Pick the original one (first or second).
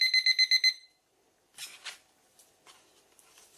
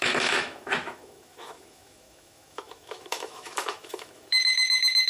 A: first